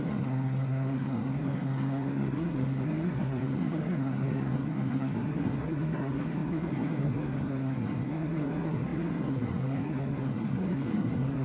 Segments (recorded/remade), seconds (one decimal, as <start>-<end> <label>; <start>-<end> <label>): 0.0-11.4 remade